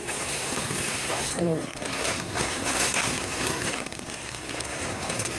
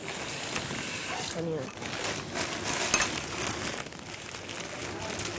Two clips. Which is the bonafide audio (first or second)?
second